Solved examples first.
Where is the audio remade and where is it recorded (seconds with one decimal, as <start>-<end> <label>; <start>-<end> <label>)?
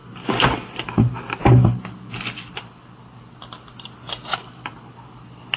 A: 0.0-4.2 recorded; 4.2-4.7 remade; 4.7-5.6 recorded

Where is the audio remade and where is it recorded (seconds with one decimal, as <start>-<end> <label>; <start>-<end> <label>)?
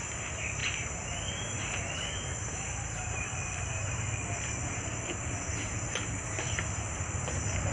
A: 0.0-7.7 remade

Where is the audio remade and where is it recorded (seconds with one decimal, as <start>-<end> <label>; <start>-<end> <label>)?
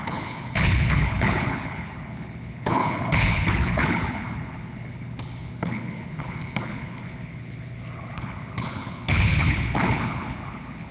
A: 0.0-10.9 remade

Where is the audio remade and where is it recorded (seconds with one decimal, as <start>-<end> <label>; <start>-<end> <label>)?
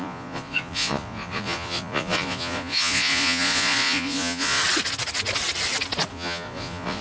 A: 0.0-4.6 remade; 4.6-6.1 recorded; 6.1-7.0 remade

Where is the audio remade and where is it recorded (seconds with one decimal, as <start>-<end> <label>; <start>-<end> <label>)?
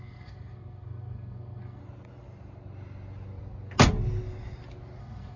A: 0.0-1.8 remade; 1.8-5.0 recorded; 5.0-5.4 remade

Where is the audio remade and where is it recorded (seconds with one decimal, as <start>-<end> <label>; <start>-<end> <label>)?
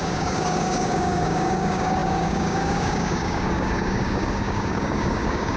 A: 0.0-5.6 remade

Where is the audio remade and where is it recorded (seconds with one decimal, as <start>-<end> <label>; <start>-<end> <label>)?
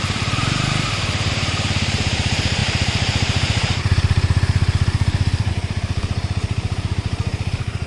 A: 0.0-7.9 remade